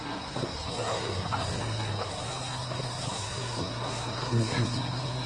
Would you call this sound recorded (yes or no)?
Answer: no